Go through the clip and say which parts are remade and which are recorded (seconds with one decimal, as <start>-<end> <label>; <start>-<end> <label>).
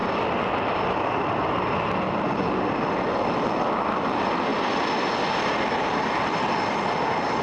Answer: 0.0-7.4 recorded